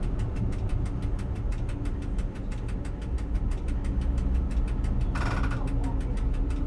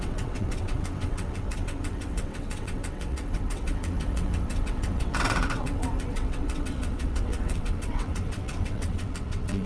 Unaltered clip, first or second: first